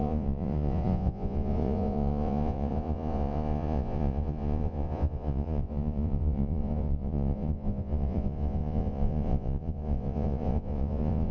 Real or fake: fake